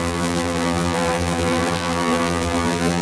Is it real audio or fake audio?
fake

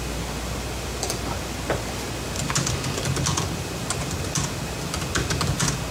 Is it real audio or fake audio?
real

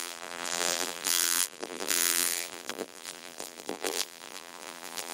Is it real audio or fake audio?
fake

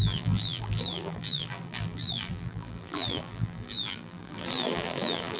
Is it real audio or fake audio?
fake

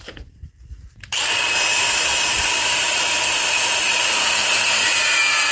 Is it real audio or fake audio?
fake